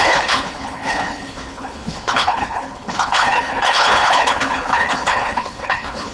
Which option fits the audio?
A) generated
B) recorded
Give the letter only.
A